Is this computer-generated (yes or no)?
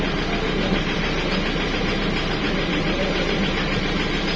yes